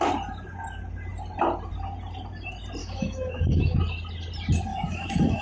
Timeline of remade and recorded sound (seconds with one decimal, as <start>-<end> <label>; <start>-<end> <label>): 0.0-2.8 recorded; 2.8-3.8 remade; 3.8-4.7 recorded; 4.7-5.4 remade